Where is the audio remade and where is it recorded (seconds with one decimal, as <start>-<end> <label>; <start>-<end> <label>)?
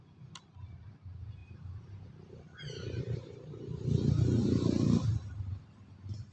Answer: 0.0-1.4 recorded; 1.4-3.9 remade; 3.9-6.3 recorded